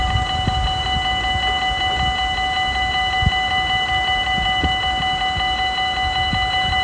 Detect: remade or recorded recorded